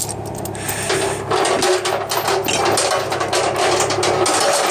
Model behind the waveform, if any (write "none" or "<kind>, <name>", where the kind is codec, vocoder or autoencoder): none